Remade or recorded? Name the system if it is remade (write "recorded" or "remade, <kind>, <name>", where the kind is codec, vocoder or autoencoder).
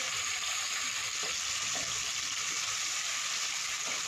recorded